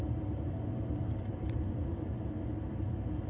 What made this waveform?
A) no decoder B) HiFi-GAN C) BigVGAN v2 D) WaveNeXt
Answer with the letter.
A